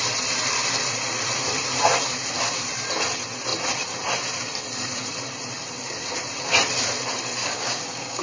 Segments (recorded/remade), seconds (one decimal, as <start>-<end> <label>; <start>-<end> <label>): 0.0-7.4 recorded; 7.4-8.2 remade